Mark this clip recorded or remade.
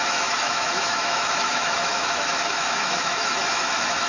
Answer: remade